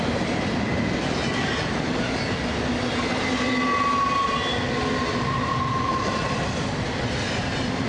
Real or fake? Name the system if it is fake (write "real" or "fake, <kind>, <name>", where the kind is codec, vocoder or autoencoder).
real